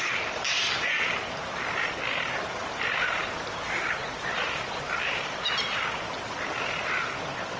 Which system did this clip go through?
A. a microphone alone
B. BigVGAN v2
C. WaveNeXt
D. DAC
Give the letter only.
B